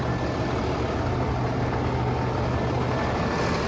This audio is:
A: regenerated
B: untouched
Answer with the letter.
B